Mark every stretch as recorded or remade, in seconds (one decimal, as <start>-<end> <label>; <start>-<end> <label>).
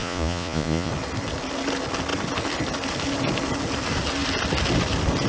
0.0-0.9 remade; 0.9-5.3 recorded